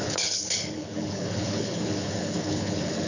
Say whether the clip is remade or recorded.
remade